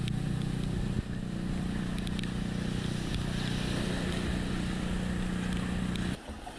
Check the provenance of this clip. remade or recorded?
recorded